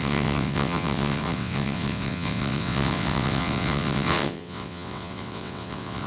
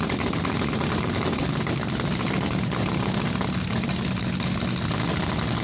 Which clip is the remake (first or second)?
first